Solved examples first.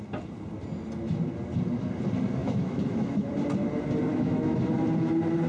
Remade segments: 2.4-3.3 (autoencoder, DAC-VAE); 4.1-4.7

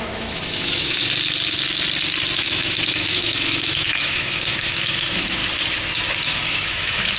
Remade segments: 0.0-1.0 (autoencoder, DAC-VAE); 2.4-5.4; 6.2-7.2

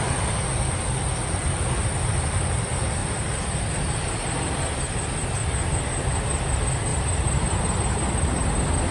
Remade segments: none

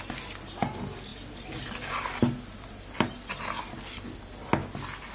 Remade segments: none

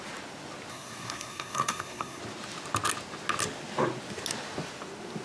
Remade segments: 0.7-2.2 (codec, SNAC)